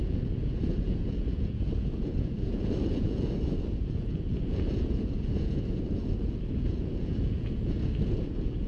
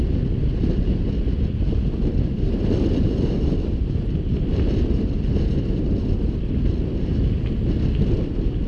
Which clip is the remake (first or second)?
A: first